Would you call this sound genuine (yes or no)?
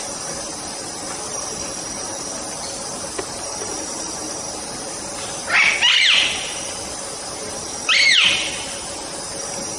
yes